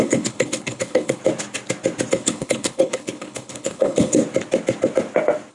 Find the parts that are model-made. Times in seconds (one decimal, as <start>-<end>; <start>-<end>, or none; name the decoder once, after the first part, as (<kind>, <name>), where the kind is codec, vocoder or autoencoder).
0.0-1.2 (codec, HILCodec); 2.1-4.2

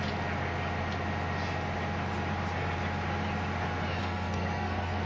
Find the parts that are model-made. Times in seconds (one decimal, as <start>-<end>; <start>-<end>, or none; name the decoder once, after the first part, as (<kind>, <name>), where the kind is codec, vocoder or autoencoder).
4.0-5.1 (codec, SNAC)